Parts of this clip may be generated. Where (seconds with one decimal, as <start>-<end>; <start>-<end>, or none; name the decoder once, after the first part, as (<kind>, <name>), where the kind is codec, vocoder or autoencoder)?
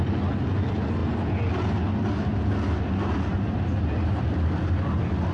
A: none